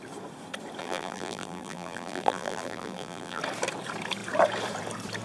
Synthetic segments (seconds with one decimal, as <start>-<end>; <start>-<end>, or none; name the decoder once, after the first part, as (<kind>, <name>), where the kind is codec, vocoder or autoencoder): 0.8-3.4 (vocoder, BigVGAN v2)